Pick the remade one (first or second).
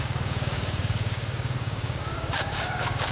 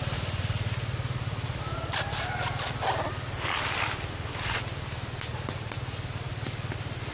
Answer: first